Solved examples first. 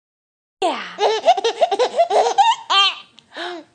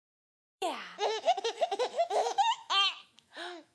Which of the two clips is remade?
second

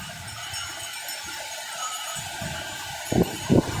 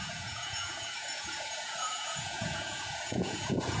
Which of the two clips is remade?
second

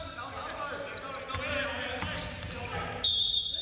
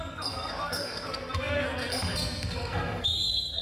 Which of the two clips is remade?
second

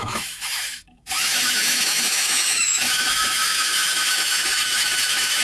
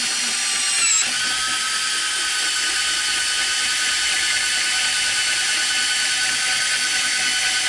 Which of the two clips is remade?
first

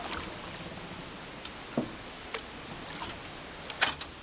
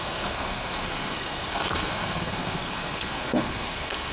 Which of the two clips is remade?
second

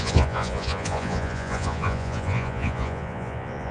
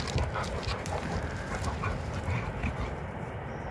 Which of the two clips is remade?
first